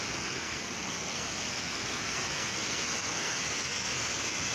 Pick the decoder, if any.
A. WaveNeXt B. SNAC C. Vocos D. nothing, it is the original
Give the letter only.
B